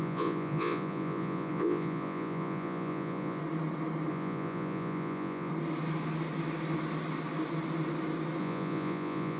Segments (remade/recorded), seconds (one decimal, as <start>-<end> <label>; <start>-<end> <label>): 0.0-3.4 remade; 3.4-4.1 recorded; 4.1-5.5 remade; 5.5-8.4 recorded; 8.4-9.4 remade